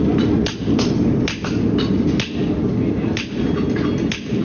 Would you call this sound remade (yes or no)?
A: no